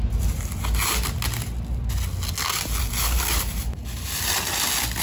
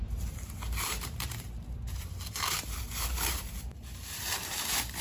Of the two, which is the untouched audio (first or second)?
first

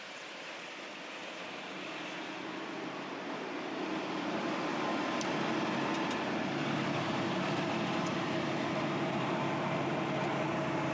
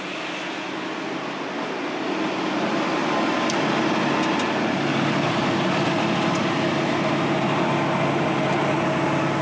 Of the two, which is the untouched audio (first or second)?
second